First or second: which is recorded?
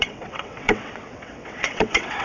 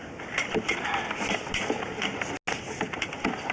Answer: second